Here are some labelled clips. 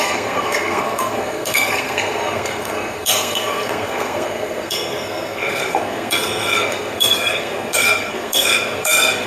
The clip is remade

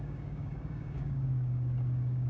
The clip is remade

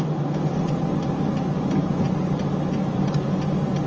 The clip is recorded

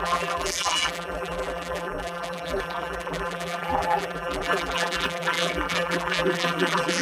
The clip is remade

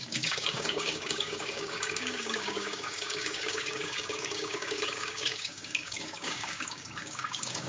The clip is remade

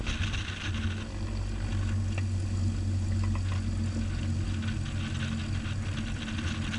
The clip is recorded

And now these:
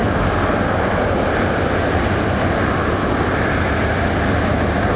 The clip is recorded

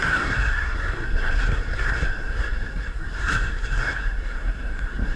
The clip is remade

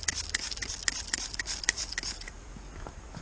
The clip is recorded